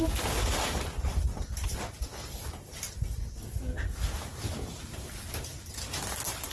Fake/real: real